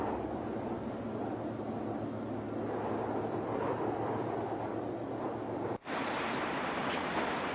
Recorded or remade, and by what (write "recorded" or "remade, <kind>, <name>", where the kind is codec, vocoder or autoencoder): recorded